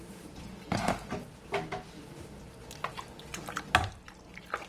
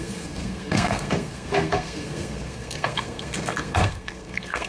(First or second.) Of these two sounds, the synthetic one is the second